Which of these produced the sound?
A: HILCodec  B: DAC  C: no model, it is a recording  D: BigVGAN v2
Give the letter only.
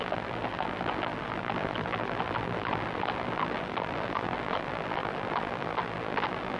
D